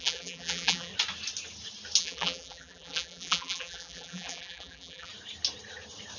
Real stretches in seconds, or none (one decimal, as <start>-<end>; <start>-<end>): 0.9-2.0; 5.1-6.2